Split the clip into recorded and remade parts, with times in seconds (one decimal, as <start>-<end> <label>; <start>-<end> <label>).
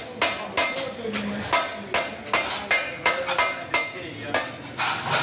0.0-5.2 recorded